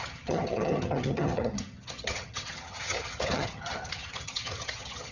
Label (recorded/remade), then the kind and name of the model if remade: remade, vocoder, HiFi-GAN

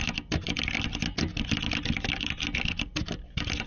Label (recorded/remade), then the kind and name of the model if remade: recorded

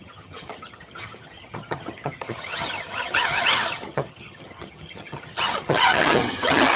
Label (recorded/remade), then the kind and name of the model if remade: remade, vocoder, HiFi-GAN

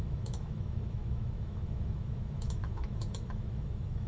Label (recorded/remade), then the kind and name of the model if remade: remade, autoencoder, DAC-VAE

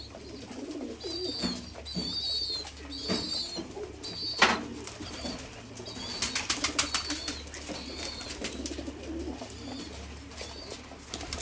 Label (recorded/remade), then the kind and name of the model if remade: recorded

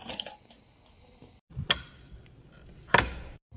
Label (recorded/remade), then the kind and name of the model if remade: recorded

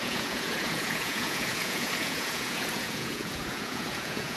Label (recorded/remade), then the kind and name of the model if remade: remade, vocoder, Vocos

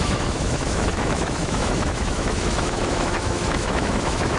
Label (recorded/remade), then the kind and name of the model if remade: remade, autoencoder, DAC-VAE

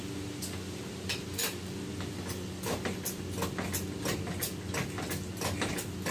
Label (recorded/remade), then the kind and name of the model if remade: recorded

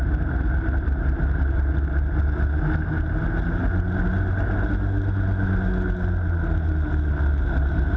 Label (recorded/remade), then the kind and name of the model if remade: recorded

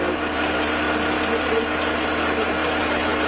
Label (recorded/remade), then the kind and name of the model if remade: recorded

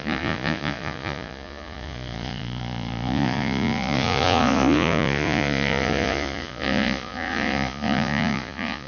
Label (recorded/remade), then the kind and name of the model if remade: remade, vocoder, Vocos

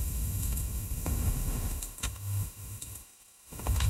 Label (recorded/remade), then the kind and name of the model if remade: remade, autoencoder, DAC-VAE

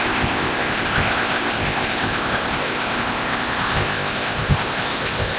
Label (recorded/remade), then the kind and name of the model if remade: remade, codec, ZipCodec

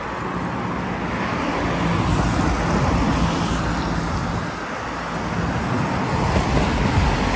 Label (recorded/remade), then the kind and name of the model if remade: recorded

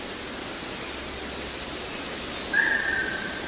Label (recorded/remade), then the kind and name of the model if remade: recorded